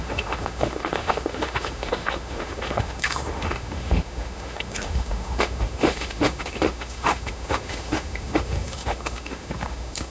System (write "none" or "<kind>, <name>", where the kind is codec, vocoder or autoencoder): autoencoder, DAC-VAE